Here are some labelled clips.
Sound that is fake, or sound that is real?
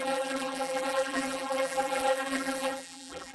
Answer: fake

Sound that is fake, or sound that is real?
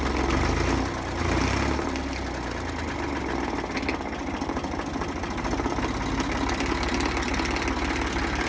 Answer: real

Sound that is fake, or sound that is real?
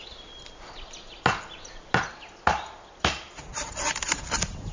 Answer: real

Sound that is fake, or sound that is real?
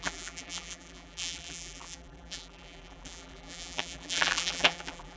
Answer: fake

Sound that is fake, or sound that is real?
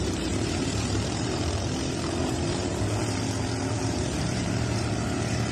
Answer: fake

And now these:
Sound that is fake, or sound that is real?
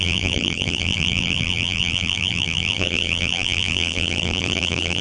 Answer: fake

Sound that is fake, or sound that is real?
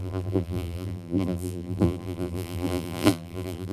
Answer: fake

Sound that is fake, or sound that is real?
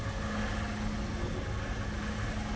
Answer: real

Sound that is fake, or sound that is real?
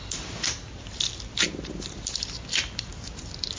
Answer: real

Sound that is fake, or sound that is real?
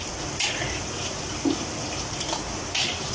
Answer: real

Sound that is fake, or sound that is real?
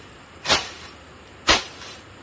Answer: fake